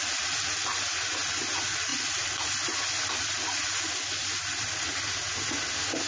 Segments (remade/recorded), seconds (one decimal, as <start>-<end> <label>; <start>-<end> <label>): 0.0-6.1 recorded